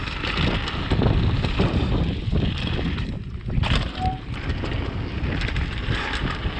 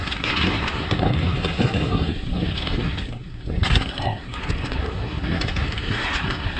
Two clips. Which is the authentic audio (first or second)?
first